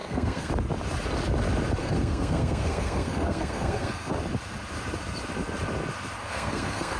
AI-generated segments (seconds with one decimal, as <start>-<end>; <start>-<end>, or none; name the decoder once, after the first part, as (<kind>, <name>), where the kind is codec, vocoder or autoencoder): 0.0-0.5 (codec, SNAC); 1.8-4.1; 6.2-7.0